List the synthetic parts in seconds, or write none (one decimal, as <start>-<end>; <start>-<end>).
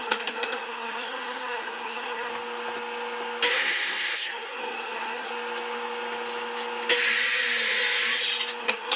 0.0-2.3; 3.5-5.3; 8.6-9.0